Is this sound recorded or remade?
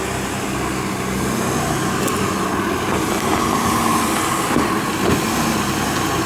recorded